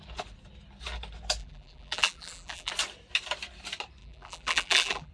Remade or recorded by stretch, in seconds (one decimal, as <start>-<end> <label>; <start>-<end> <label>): 0.0-1.4 recorded; 1.4-2.7 remade; 2.7-4.0 recorded; 4.0-5.1 remade